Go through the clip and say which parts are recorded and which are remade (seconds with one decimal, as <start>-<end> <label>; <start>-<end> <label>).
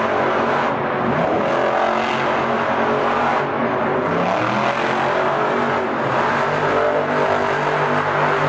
0.0-8.5 recorded